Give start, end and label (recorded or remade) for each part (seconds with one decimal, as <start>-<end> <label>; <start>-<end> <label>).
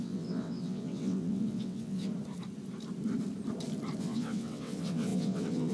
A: 0.0-2.1 remade; 2.1-4.0 recorded; 4.0-5.7 remade